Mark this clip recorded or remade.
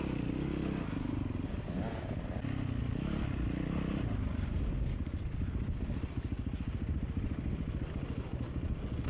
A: recorded